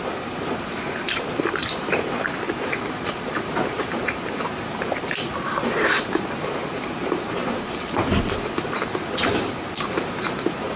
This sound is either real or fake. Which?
fake